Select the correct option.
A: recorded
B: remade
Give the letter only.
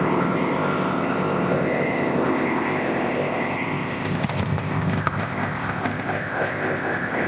B